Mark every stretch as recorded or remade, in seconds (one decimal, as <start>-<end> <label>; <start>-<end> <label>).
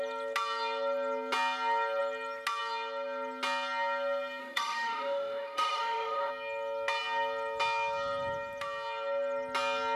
0.0-4.4 recorded; 4.4-6.3 remade; 6.3-10.0 recorded